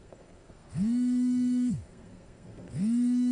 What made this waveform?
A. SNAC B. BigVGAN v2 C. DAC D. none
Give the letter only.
A